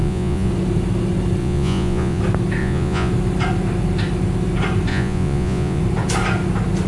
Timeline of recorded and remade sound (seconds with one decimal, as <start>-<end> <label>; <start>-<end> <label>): 0.0-0.5 remade; 0.5-1.4 recorded; 1.4-2.2 remade; 2.2-2.6 recorded; 2.6-3.1 remade; 3.1-4.9 recorded; 4.9-5.8 remade; 5.8-6.9 recorded